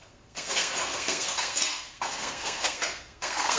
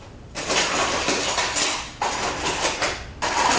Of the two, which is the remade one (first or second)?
first